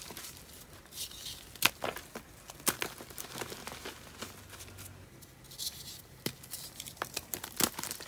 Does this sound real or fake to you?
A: real